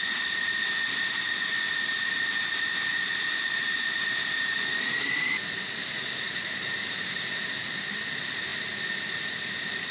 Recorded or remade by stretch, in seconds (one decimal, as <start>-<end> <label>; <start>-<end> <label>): 0.0-9.9 recorded